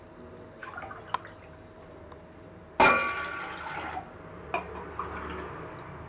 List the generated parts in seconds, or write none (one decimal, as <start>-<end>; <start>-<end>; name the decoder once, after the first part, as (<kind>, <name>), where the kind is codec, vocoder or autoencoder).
none